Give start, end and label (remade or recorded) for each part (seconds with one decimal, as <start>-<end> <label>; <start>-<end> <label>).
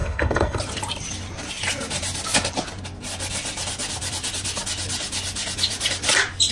0.0-0.6 remade; 0.6-6.5 recorded